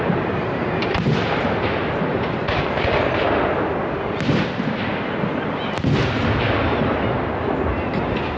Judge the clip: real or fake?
real